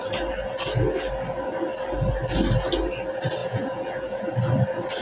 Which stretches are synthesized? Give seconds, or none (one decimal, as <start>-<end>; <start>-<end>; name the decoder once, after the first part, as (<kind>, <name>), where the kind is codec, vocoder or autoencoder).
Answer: 3.4-4.2 (vocoder, Vocos)